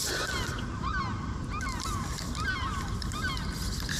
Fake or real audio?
real